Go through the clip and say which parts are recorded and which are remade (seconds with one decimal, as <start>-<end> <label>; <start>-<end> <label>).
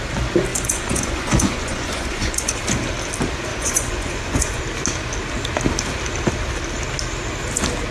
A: 0.0-0.5 recorded; 0.5-2.6 remade; 2.6-3.5 recorded; 3.5-4.6 remade; 4.6-7.9 recorded